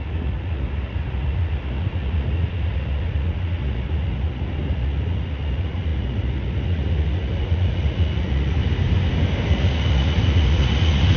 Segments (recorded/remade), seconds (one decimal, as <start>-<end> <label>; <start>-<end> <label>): 0.0-8.6 remade; 8.6-9.5 recorded; 9.5-11.2 remade